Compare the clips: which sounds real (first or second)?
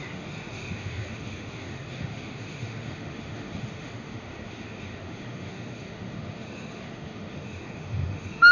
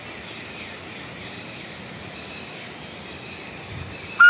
second